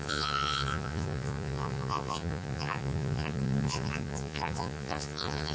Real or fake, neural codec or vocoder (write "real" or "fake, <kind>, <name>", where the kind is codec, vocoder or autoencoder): fake, vocoder, Vocos